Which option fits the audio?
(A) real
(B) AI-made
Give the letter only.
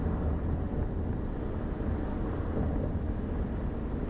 A